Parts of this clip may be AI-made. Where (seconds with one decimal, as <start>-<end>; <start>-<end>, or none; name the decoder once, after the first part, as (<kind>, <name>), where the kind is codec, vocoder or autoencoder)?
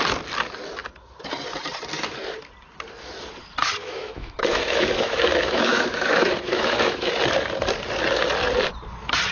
3.8-7.1 (autoencoder, DAC-VAE)